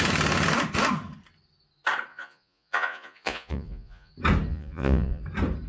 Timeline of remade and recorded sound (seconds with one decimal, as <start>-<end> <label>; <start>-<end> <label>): 0.0-2.1 recorded; 2.1-4.1 remade; 4.1-4.5 recorded; 4.5-5.2 remade; 5.2-5.7 recorded